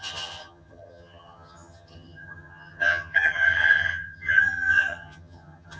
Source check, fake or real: fake